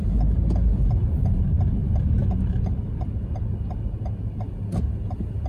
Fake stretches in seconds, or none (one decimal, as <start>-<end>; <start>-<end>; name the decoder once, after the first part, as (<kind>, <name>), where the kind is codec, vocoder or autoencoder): none

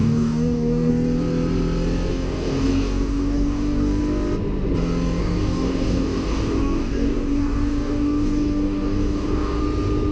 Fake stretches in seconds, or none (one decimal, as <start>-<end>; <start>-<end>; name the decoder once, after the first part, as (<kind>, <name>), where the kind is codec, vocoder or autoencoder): 0.0-0.9 (codec, DAC); 2.1-4.0; 5.2-9.6